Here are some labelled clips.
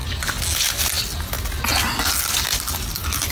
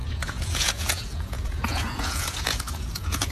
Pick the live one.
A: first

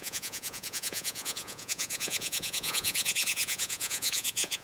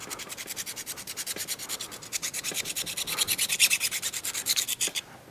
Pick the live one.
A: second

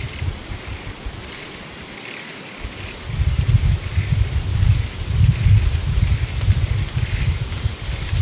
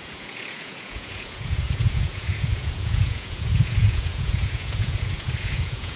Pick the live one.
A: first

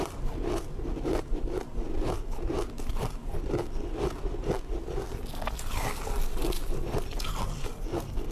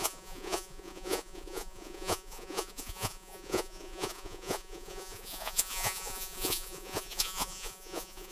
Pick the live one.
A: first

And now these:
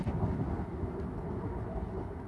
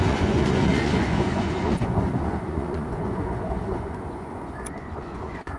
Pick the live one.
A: first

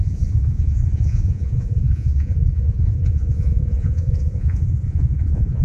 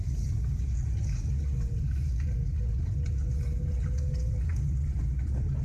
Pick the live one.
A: second